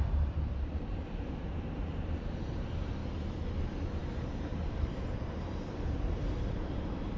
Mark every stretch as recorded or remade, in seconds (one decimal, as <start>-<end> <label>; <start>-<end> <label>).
0.0-3.0 remade; 3.0-3.6 recorded; 3.6-7.2 remade